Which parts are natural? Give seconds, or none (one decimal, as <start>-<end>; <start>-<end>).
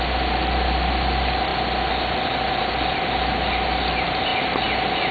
0.0-5.1